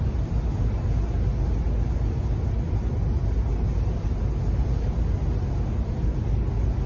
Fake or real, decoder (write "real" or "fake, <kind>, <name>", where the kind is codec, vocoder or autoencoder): real